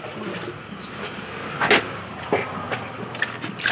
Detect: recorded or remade recorded